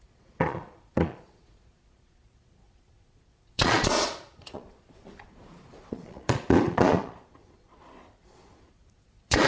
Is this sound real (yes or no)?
no